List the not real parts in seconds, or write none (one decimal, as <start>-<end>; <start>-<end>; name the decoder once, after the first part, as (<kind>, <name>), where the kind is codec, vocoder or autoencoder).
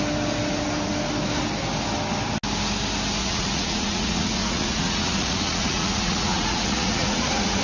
3.2-7.6 (vocoder, Vocos)